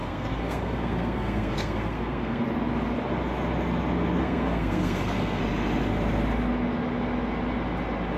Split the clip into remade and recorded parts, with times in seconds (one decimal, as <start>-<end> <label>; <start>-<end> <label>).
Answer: 0.0-2.4 remade; 2.4-4.2 recorded; 4.2-5.4 remade; 5.4-8.2 recorded